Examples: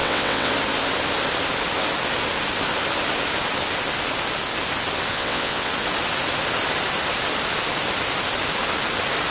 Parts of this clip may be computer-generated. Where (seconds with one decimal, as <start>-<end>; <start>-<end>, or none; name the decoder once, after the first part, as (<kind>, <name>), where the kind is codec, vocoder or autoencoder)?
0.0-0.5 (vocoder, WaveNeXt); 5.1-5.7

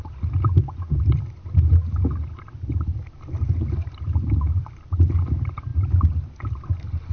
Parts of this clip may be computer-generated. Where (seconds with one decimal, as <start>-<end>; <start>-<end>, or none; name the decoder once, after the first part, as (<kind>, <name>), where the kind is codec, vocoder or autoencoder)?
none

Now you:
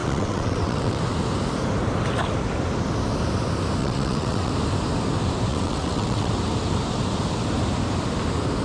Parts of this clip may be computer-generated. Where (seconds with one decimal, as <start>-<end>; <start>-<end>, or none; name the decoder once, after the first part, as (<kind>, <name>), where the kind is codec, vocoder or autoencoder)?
0.0-1.0 (vocoder, WaveNeXt); 3.8-4.5; 5.5-6.3

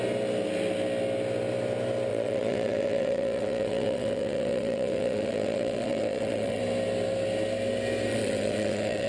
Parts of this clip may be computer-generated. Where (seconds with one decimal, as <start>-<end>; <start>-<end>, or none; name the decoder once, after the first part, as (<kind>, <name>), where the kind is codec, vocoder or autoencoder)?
2.1-6.6 (vocoder, WaveNeXt); 8.1-9.1

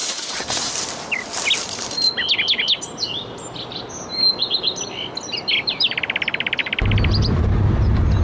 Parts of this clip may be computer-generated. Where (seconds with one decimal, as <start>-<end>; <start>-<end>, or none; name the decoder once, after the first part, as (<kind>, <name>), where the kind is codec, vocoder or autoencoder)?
0.0-0.7 (vocoder, WaveNeXt)

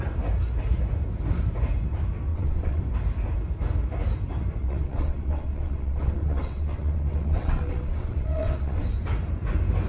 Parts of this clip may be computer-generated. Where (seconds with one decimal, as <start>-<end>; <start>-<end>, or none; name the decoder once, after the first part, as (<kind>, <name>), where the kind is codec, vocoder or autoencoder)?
2.3-2.8 (vocoder, WaveNeXt); 4.6-8.8

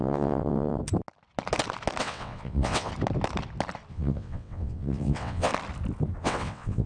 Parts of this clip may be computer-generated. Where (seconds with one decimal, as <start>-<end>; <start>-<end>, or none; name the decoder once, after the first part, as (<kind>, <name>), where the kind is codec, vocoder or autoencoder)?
0.0-0.8 (vocoder, WaveNeXt); 2.0-2.9; 3.9-5.5; 6.2-6.9